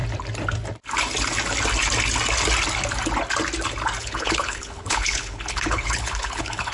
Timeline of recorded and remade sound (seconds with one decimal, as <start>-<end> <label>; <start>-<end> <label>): 0.0-4.0 recorded; 4.0-6.7 remade